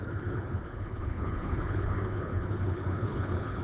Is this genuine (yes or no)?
no